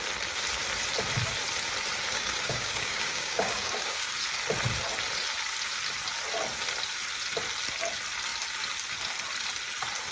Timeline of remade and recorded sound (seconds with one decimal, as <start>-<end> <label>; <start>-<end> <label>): 0.0-2.1 recorded; 2.1-4.1 remade; 4.1-10.1 recorded